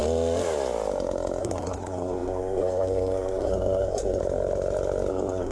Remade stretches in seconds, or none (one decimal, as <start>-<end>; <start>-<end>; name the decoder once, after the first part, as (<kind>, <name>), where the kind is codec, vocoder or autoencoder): 1.4-4.2 (codec, SNAC); 5.1-5.5